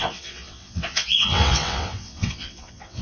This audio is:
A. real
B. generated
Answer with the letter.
B